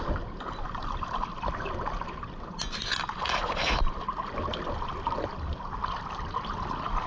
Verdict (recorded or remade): recorded